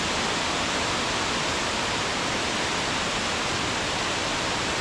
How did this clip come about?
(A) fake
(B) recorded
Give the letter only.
B